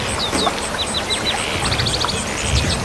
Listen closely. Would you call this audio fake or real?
real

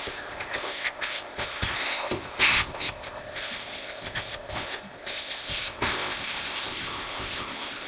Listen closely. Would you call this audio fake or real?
fake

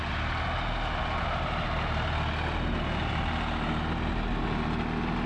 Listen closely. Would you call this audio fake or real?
real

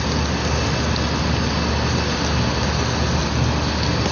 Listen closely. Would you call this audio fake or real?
real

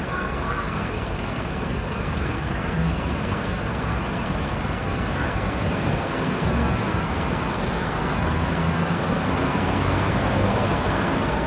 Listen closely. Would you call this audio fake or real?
fake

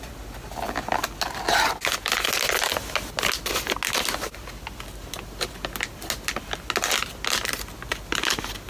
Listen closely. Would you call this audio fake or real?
real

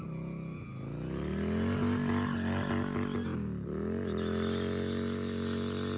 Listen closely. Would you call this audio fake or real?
real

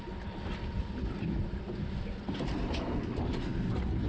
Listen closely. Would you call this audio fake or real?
real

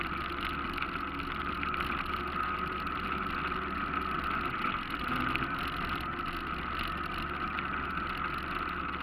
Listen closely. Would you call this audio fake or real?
real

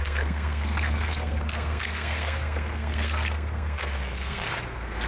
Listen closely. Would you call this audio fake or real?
fake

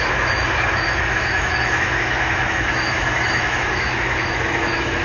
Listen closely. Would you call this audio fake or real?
fake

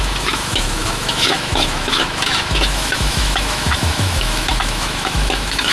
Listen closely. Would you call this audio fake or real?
fake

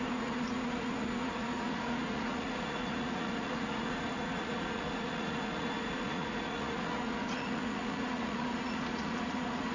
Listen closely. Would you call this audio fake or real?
fake